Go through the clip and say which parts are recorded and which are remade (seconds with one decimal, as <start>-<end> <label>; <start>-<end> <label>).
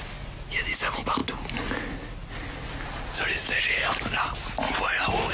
0.0-5.3 recorded